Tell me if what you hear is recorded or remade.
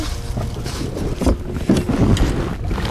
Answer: recorded